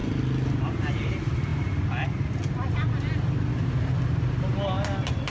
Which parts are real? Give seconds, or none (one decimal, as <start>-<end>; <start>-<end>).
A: 0.0-5.3